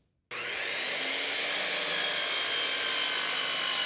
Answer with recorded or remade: recorded